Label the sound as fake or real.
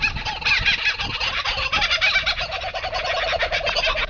real